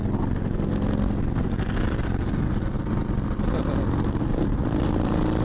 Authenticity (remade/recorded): recorded